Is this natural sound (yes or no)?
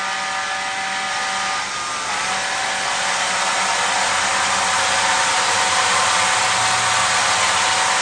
yes